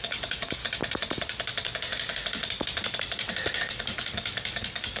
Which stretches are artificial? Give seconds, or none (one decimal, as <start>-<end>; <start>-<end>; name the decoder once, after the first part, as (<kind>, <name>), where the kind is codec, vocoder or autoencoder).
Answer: 0.0-0.6 (codec, DAC); 3.6-5.0